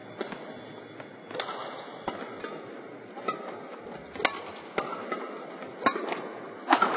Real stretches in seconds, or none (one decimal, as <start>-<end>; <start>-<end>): 0.0-7.0